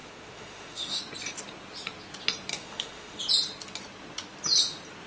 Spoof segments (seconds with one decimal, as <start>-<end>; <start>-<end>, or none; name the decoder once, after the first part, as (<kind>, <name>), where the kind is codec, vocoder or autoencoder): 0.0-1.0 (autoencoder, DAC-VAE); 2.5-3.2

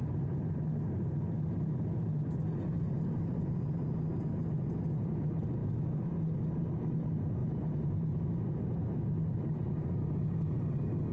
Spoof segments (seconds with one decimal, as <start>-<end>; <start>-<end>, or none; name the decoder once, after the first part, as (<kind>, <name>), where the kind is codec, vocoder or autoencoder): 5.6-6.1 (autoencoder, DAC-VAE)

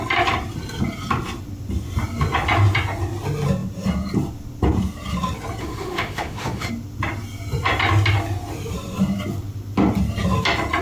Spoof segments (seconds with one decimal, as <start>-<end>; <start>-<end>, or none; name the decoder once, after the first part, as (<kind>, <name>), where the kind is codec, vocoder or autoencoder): 5.6-6.7 (autoencoder, DAC-VAE)

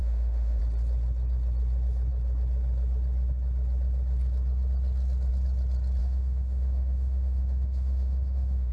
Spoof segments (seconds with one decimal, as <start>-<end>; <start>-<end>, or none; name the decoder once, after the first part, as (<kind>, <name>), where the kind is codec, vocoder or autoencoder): 0.0-0.6 (autoencoder, DAC-VAE); 6.0-8.7

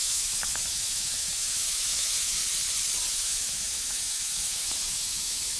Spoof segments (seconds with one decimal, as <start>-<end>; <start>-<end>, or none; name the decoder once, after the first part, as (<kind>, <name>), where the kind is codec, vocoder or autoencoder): 0.0-2.4 (autoencoder, DAC-VAE); 3.1-5.6

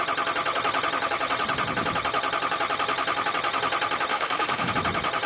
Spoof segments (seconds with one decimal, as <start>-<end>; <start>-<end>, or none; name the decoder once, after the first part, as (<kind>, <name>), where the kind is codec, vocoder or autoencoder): 4.1-4.7 (autoencoder, DAC-VAE)